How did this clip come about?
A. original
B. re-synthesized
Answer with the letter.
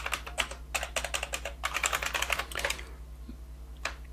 A